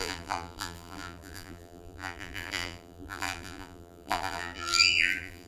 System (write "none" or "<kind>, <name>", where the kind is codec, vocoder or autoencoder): vocoder, BigVGAN v2